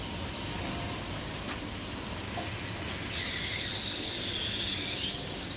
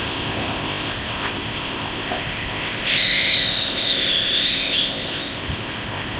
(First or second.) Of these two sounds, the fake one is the second